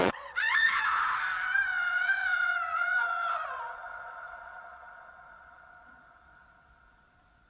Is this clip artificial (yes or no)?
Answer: yes